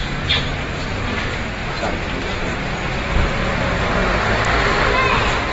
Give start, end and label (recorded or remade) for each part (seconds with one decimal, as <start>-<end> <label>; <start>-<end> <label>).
0.0-5.5 recorded